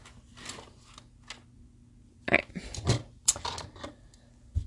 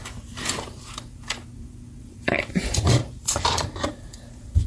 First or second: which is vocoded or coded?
second